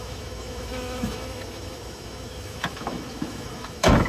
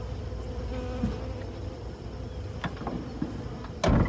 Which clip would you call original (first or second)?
second